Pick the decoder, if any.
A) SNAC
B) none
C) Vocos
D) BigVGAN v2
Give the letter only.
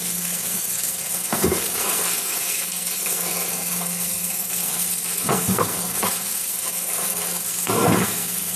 A